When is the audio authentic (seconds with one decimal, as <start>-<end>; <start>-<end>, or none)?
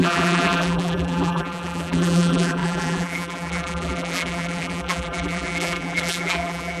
none